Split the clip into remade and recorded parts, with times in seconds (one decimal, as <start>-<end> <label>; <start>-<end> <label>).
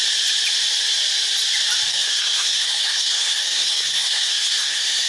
0.0-1.9 recorded; 1.9-5.1 remade